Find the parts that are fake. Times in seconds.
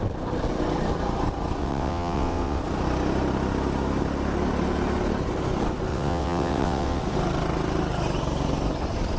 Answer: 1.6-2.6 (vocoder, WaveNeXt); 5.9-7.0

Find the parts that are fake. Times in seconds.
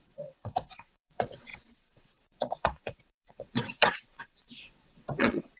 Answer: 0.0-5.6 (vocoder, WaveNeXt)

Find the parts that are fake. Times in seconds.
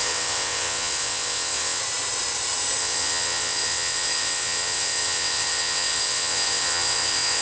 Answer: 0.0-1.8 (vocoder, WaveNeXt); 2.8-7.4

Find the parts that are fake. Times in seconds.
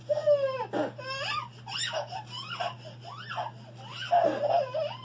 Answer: none